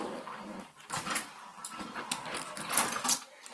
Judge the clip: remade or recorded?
recorded